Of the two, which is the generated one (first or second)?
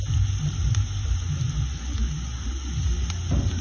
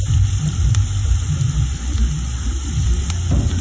second